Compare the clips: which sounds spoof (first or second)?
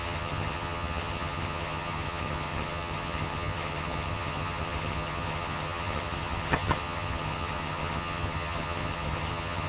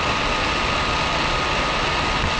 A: first